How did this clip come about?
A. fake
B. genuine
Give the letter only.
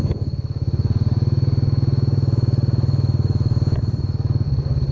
A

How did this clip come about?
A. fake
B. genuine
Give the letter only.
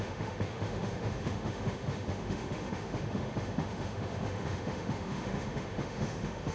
A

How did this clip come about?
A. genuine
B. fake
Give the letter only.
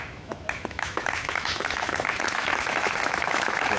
B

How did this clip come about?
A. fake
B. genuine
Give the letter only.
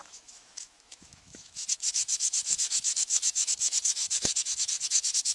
A